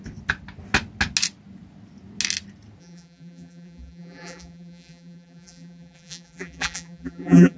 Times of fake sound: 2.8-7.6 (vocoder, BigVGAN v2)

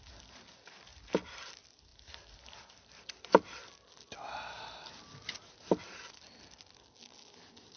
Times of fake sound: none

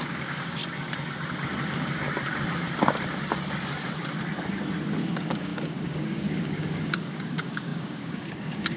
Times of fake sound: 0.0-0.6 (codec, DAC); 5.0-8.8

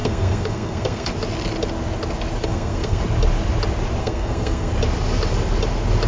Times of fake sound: 0.0-1.1 (codec, SNAC); 2.4-3.0; 4.0-4.7